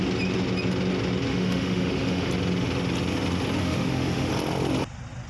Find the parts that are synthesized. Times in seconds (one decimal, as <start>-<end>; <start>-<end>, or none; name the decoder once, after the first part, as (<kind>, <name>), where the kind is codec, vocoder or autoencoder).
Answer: 1.3-2.3 (autoencoder, DAC-VAE); 3.6-4.3